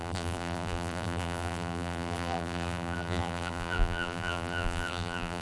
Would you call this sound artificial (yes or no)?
yes